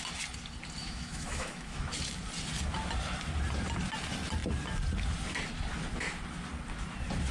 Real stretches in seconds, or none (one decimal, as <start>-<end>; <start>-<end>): 0.0-0.8; 1.9-7.3